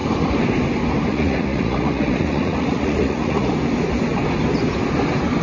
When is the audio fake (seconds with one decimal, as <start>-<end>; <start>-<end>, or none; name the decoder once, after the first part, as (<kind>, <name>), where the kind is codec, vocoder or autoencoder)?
1.1-3.5 (vocoder, Vocos)